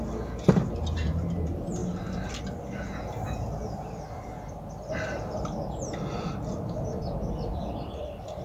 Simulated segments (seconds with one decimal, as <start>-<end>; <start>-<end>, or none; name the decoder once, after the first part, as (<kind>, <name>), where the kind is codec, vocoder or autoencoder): 0.0-1.8 (vocoder, BigVGAN v2); 6.5-8.4